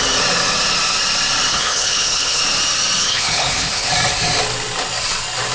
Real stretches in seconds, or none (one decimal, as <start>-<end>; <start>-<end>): 0.0-1.5; 2.4-3.0; 3.9-5.5